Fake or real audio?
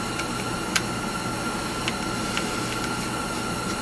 real